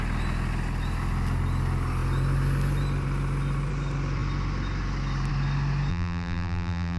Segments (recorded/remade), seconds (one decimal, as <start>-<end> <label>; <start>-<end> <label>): 0.0-5.9 recorded; 5.9-7.0 remade